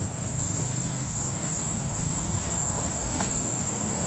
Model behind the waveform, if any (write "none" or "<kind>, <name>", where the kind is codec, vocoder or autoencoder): codec, DAC